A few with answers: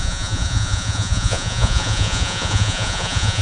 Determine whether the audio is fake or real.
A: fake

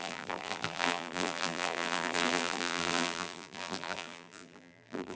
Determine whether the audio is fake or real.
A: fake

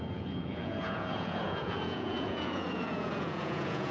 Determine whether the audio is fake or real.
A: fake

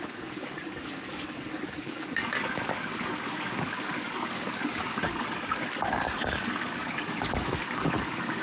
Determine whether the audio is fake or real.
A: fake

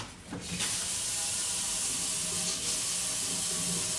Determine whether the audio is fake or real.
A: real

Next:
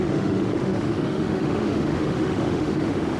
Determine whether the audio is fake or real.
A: fake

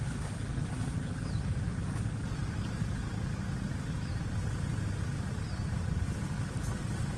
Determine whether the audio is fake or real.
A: real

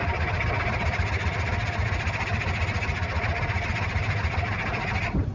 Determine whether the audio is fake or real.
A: real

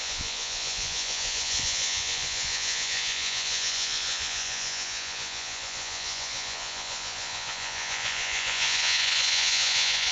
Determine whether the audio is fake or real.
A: fake